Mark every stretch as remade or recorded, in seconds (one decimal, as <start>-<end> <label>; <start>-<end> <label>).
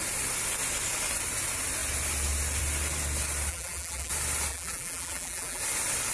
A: 0.0-3.5 recorded; 3.5-4.1 remade; 4.1-4.5 recorded; 4.5-5.6 remade; 5.6-6.1 recorded